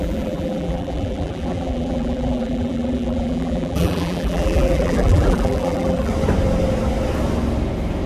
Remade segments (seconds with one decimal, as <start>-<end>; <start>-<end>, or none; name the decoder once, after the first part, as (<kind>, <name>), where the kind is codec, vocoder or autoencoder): 0.0-6.1 (vocoder, BigVGAN v2)